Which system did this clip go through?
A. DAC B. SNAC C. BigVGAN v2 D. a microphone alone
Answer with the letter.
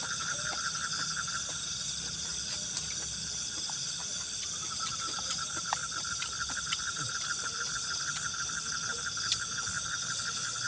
C